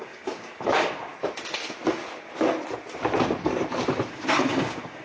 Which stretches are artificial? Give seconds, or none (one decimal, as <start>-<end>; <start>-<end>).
0.0-1.1; 4.1-5.0